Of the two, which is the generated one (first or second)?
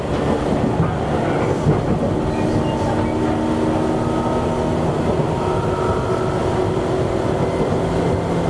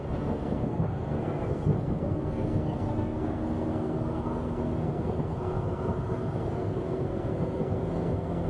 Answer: second